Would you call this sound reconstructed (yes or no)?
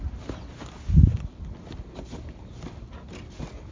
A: no